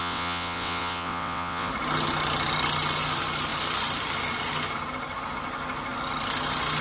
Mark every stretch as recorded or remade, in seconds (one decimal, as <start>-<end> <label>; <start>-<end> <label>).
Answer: 0.0-1.7 remade; 1.7-6.8 recorded